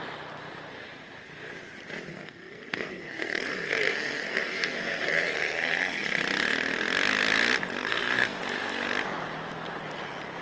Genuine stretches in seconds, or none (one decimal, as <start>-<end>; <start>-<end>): 0.0-2.1; 6.2-7.8; 8.4-10.4